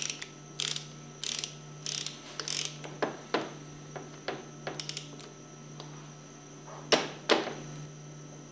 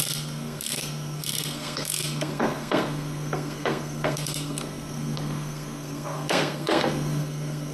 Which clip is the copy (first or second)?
second